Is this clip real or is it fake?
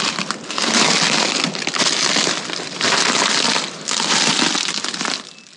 real